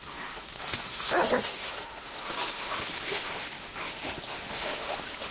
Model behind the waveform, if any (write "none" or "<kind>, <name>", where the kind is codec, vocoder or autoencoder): autoencoder, DAC-VAE